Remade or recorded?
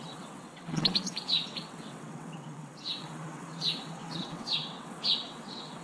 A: remade